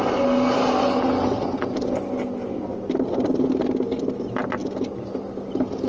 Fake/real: real